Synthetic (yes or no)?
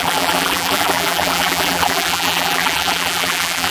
yes